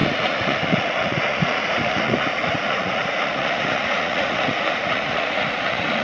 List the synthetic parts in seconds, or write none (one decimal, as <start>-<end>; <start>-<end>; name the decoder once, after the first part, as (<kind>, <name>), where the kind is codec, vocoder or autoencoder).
0.0-6.0 (vocoder, Vocos)